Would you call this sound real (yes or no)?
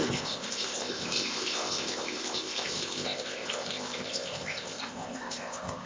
no